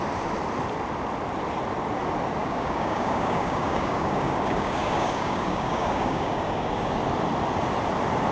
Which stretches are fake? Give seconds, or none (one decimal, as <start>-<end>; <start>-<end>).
2.4-7.0